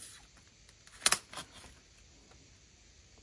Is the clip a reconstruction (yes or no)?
no